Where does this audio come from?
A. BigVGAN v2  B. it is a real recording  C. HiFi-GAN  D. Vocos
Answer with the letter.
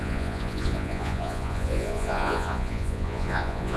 D